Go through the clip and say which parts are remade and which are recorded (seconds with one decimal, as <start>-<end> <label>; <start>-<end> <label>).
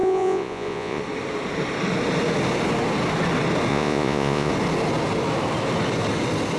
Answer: 0.0-1.0 remade; 1.0-3.7 recorded; 3.7-4.5 remade; 4.5-6.6 recorded